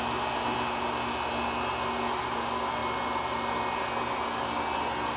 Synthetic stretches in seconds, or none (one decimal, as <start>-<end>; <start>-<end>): none

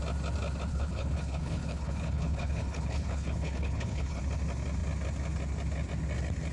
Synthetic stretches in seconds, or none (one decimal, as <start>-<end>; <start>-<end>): 0.7-4.2

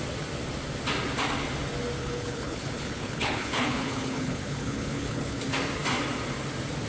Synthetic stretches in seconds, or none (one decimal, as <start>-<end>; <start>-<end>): 2.0-5.4

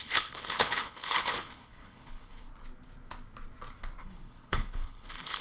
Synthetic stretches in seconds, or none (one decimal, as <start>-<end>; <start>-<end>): 0.0-2.5; 4.0-5.4

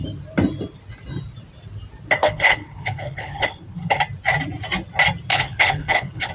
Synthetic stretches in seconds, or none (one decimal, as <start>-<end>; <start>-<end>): 2.2-4.0; 5.3-6.3

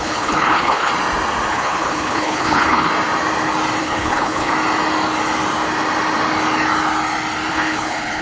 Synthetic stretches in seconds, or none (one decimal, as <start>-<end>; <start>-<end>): 0.0-0.9; 1.5-2.9; 3.8-4.5; 7.5-8.2

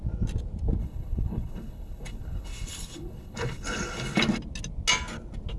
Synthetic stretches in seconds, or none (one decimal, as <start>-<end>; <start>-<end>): 0.8-4.2

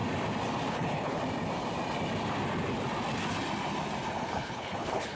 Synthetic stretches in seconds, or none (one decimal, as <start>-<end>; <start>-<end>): 0.7-1.2; 4.2-5.2